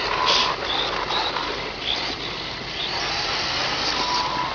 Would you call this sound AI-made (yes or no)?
no